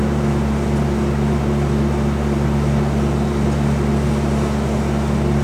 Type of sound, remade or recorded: recorded